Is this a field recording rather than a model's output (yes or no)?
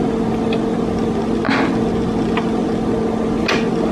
yes